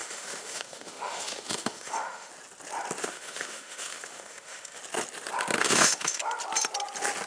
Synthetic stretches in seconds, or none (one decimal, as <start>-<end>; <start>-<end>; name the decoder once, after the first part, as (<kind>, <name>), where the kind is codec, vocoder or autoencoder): 0.0-2.3 (autoencoder, DAC-VAE); 3.0-4.8; 5.6-6.2